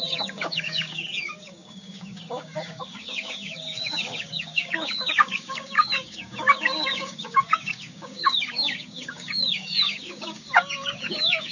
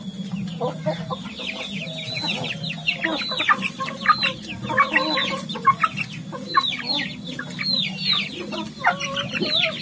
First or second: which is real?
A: second